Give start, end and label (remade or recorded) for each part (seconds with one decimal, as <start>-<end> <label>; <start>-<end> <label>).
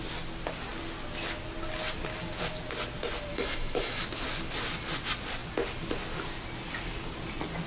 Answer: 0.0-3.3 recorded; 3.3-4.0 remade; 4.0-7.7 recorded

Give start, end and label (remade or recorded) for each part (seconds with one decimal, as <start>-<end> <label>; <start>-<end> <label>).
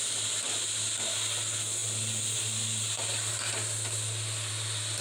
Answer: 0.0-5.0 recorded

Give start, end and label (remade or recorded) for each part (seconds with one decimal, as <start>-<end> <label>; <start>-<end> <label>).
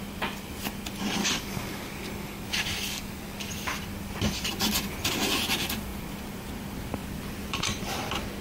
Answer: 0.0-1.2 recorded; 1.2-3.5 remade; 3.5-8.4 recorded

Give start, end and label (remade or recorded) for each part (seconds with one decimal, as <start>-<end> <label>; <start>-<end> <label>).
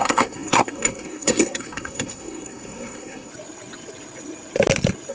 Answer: 0.0-3.3 remade; 3.3-5.1 recorded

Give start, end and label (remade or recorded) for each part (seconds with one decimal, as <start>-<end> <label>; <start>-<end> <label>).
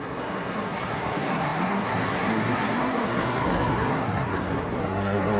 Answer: 0.0-5.4 remade